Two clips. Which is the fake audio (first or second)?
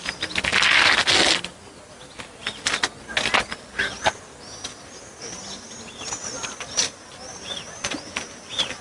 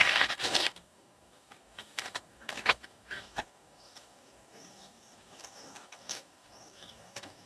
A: second